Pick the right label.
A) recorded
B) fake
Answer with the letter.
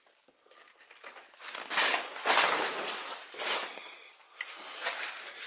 A